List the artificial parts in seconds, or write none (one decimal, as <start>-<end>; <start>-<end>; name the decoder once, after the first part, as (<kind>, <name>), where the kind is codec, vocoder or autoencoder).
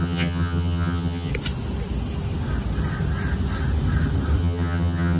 0.0-1.3 (vocoder, HiFi-GAN); 4.4-5.2